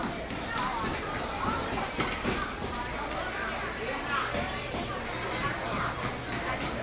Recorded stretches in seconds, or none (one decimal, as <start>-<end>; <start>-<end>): 0.0-0.9; 1.9-4.5; 6.1-6.8